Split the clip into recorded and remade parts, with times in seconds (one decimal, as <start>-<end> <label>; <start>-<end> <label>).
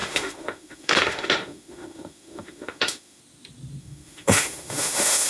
0.0-3.2 remade; 3.2-3.8 recorded; 3.8-5.3 remade